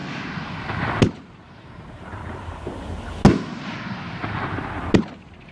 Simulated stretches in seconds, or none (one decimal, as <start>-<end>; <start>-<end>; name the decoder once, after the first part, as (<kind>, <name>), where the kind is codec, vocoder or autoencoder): none